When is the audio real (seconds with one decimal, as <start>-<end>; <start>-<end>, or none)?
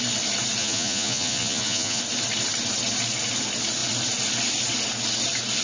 0.0-0.6; 2.0-5.6